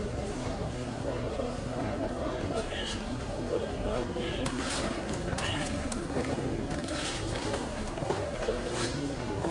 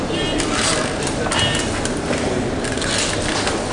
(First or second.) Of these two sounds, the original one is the second